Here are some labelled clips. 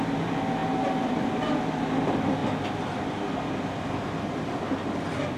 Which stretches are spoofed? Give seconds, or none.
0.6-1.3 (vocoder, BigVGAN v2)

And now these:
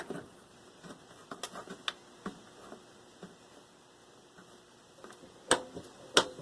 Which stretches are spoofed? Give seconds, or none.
none